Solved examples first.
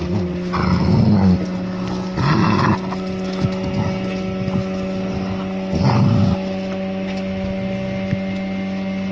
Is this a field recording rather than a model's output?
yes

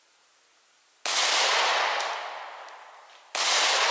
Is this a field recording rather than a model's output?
yes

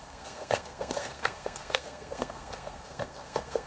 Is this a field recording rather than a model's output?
no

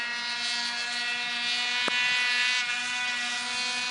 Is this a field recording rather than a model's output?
yes